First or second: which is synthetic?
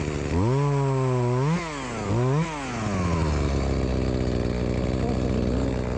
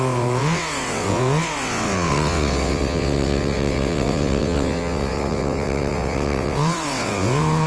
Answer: second